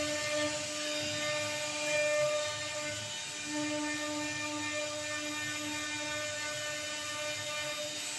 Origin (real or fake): real